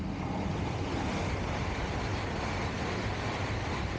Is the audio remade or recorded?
remade